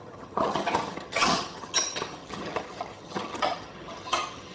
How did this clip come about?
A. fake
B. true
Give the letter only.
A